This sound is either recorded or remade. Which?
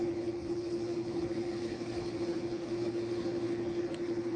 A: remade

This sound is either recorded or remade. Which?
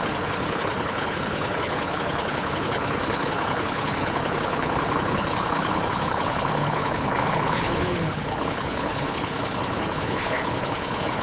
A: remade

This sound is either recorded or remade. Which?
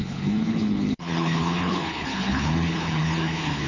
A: remade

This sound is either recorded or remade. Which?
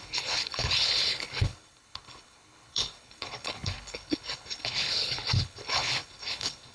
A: remade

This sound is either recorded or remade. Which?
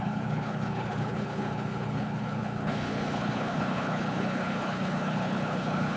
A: remade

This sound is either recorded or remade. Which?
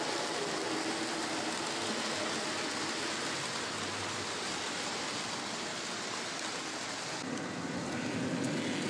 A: recorded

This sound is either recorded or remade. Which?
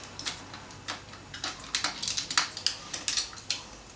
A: recorded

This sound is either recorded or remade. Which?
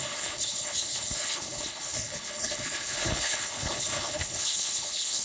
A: remade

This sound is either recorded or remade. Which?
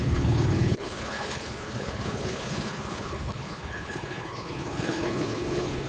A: remade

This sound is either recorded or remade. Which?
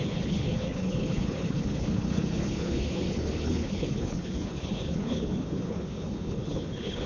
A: remade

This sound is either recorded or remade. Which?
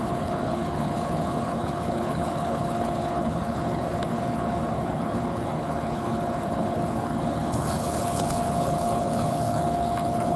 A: remade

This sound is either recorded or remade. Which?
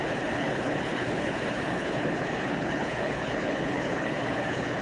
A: remade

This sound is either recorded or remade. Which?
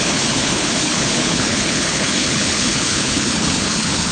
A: remade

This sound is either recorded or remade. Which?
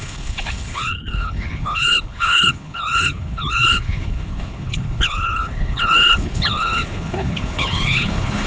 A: remade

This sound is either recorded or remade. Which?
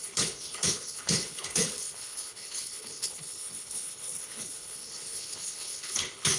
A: remade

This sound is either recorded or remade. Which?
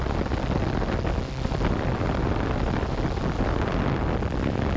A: recorded